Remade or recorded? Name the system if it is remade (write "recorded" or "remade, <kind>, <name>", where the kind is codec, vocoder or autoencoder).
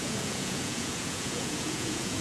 remade, vocoder, Vocos